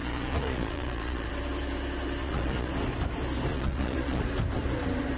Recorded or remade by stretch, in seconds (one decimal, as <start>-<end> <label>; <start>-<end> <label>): 0.0-1.3 remade; 1.3-2.2 recorded; 2.2-2.7 remade; 2.7-3.5 recorded; 3.5-4.2 remade; 4.2-5.2 recorded